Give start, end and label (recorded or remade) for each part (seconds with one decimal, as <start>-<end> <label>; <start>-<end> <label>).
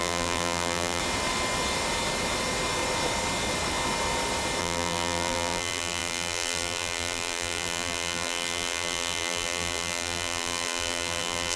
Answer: 0.0-1.0 remade; 1.0-4.6 recorded; 4.6-11.6 remade